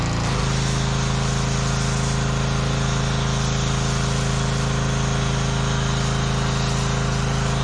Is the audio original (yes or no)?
yes